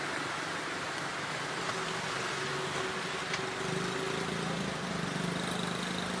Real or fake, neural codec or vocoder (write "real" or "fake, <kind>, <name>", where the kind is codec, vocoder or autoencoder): real